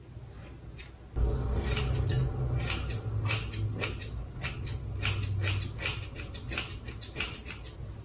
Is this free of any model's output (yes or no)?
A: yes